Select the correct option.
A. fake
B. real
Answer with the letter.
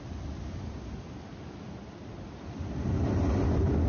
B